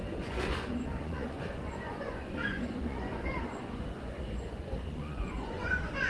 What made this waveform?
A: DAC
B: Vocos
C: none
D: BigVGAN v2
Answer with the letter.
B